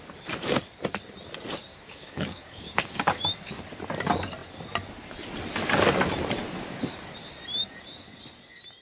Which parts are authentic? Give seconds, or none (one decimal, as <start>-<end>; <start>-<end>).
0.0-1.7; 3.2-8.8

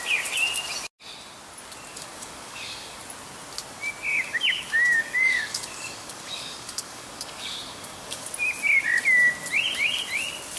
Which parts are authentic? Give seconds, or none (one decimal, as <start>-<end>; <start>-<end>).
0.0-1.9; 3.0-4.1; 8.2-10.6

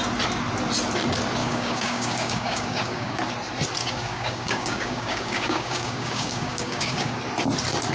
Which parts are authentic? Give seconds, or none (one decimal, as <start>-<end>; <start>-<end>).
0.0-1.4; 3.2-3.8; 7.2-7.9

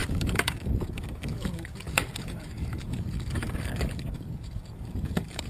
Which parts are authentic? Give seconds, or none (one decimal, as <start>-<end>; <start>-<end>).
none

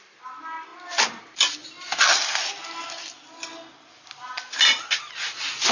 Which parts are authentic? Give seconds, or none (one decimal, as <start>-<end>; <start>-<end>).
0.0-5.7

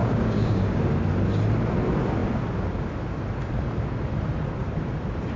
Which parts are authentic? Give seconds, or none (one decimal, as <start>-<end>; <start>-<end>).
0.8-5.4

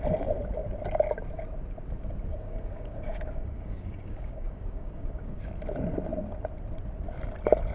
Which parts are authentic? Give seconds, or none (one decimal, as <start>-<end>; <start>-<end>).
0.0-2.3; 5.4-7.7